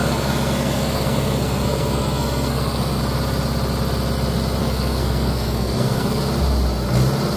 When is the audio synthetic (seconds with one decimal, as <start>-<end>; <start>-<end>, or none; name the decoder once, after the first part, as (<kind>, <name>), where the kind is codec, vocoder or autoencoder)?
0.0-3.0 (codec, SNAC); 4.6-6.2